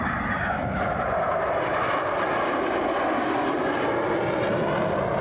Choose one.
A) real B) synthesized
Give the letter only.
A